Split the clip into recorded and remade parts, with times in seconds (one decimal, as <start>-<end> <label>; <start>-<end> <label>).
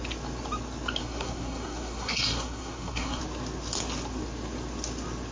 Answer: 0.0-1.0 recorded; 1.0-3.2 remade; 3.2-5.3 recorded